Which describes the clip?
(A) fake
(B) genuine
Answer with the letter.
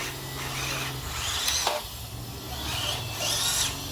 B